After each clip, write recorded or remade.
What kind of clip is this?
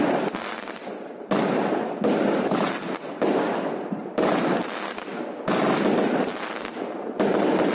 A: recorded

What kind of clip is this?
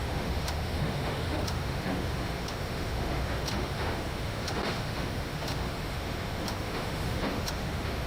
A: remade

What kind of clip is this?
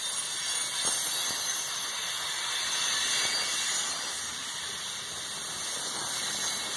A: recorded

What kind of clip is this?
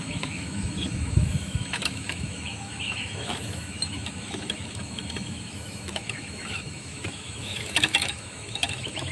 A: remade